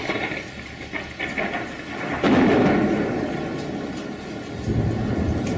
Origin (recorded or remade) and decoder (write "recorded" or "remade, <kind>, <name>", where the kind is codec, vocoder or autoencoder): recorded